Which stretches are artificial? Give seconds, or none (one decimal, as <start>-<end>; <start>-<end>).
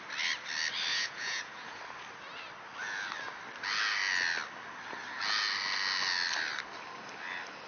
0.9-1.8